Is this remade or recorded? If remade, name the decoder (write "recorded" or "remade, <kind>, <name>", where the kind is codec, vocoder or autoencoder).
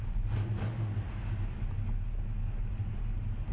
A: recorded